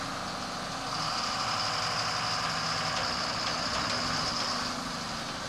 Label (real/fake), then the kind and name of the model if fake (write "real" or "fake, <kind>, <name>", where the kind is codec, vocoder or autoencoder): real